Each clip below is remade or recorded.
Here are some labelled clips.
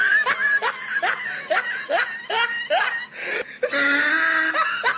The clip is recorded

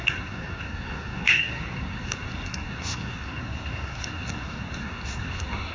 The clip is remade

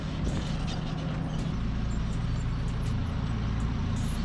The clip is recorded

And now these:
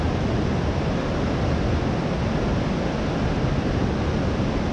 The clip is recorded